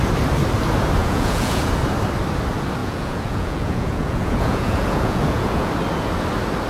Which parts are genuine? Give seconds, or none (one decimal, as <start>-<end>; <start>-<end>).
0.0-1.0; 1.7-2.8; 5.7-6.7